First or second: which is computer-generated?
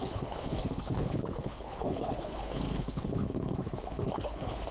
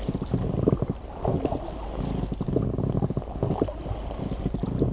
first